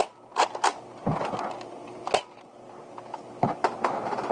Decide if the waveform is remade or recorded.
recorded